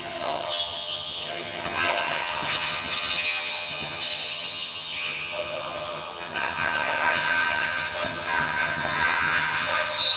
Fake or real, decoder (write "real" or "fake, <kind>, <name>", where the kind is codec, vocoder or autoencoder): fake, vocoder, HiFi-GAN